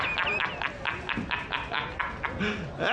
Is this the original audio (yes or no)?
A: yes